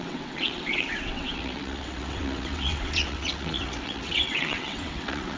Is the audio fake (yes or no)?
yes